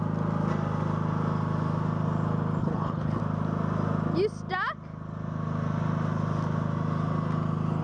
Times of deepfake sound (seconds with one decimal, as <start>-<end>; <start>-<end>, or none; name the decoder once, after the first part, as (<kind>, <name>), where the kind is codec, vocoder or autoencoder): 2.6-3.2 (codec, HILCodec)